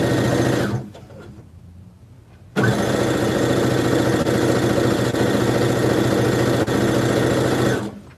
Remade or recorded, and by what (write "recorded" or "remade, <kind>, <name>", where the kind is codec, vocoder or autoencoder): recorded